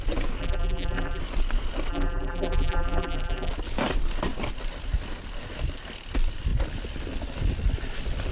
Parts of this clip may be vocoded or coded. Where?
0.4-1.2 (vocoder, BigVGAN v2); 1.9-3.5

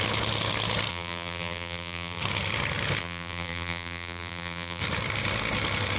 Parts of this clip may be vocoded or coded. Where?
0.9-2.2 (vocoder, BigVGAN v2); 3.0-4.8

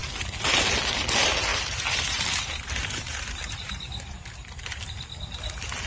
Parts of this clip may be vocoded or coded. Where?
1.5-4.8 (vocoder, BigVGAN v2)

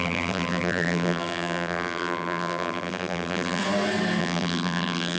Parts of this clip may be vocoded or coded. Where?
0.0-3.6 (vocoder, BigVGAN v2); 4.2-5.2

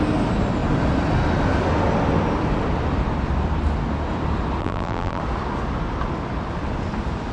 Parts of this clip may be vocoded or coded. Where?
4.6-5.2 (vocoder, BigVGAN v2)